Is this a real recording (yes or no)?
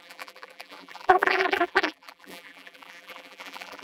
no